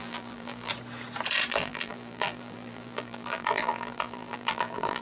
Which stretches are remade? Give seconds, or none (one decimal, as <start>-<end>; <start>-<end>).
0.0-0.7; 1.5-5.0

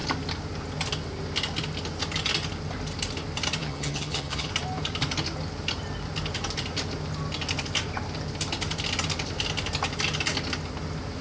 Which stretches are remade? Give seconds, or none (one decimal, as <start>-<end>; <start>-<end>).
3.6-4.5

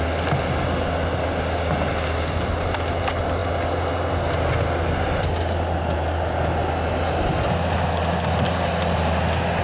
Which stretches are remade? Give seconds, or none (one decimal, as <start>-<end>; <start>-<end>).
none

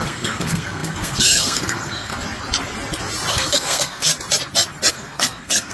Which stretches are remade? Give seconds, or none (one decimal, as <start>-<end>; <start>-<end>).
0.0-2.1; 3.3-4.1; 4.9-5.7

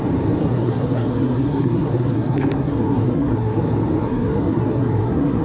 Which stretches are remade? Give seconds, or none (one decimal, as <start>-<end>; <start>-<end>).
0.4-3.6; 4.0-5.4

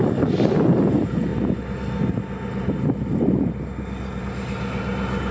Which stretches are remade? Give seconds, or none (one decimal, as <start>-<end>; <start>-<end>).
none

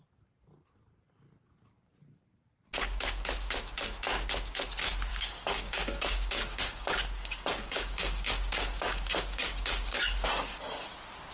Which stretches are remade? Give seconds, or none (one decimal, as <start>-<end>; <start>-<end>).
5.1-10.3

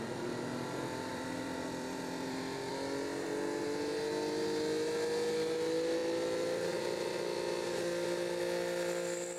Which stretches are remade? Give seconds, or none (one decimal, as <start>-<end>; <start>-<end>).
1.1-2.7